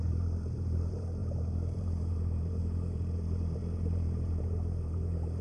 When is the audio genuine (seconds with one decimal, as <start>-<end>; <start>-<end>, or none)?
none